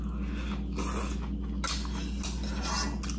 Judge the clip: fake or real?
real